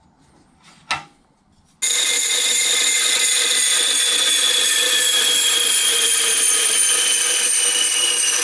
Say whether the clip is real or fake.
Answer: real